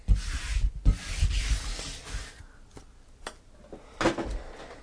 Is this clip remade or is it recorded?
recorded